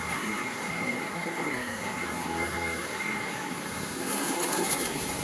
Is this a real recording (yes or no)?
no